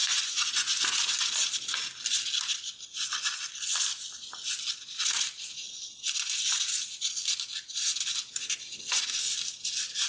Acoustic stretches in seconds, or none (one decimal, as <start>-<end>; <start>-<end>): 0.7-10.1